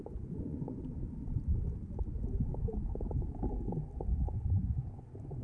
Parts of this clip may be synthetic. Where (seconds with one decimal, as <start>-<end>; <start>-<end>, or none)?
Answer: 0.0-0.9; 4.1-5.4